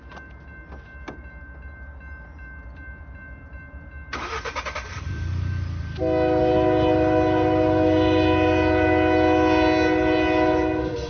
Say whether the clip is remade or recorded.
recorded